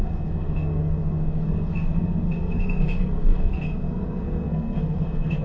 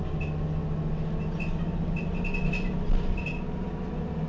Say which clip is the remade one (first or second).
first